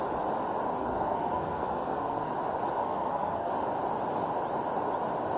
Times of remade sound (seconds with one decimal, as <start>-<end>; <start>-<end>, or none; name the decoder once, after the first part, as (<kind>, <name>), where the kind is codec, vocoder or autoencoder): 0.8-2.3 (codec, SNAC); 2.8-3.5